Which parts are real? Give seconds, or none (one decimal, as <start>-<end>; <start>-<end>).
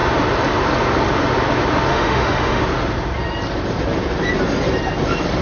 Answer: 0.0-1.9; 2.6-5.4